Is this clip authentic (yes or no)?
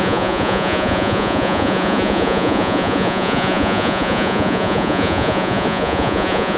no